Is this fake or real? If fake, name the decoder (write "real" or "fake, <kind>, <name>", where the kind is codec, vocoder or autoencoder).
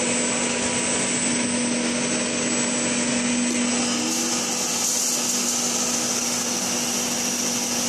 real